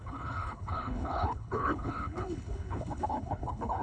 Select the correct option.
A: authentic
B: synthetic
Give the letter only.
B